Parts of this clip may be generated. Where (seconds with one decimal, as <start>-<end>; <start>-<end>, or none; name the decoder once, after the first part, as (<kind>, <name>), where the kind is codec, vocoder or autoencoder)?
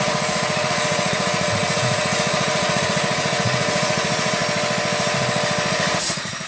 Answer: 0.0-4.4 (vocoder, Vocos); 5.7-6.5